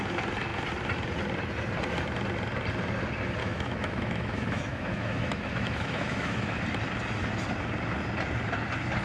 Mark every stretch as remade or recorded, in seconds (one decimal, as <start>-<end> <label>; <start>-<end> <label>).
0.0-3.4 recorded; 3.4-6.6 remade; 6.6-9.0 recorded